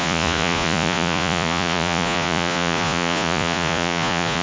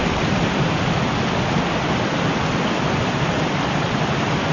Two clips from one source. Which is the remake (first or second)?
first